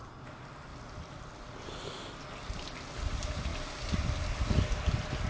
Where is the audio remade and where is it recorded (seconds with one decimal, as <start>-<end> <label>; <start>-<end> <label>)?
0.0-5.3 recorded